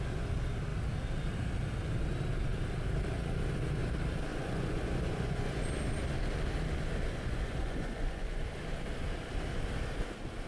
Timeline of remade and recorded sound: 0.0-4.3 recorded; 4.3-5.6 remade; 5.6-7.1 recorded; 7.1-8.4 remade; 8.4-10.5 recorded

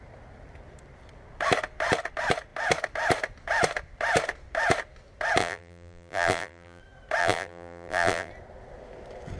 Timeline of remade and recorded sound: 0.0-5.4 recorded; 5.4-6.8 remade; 6.8-7.2 recorded; 7.2-8.3 remade; 8.3-9.4 recorded

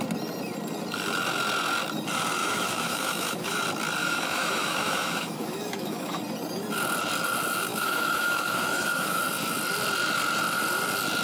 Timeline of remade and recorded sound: 0.0-2.4 recorded; 2.4-3.6 remade; 3.6-4.0 recorded; 4.0-6.2 remade; 6.2-7.7 recorded; 7.7-9.2 remade; 9.2-11.2 recorded

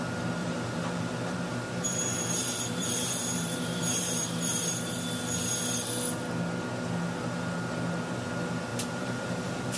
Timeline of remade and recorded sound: 0.0-0.4 recorded; 0.4-4.9 remade; 4.9-8.7 recorded; 8.7-9.8 remade